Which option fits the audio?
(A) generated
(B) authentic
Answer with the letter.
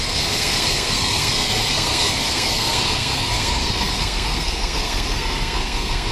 A